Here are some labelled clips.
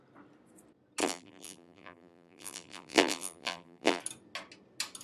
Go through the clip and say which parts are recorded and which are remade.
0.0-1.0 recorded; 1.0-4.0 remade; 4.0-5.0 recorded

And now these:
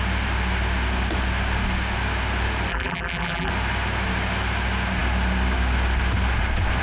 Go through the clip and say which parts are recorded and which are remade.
0.0-2.7 recorded; 2.7-3.5 remade; 3.5-6.8 recorded

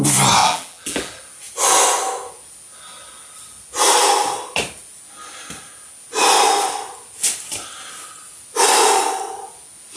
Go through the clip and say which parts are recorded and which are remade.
0.0-0.4 recorded; 0.4-1.2 remade; 1.2-10.0 recorded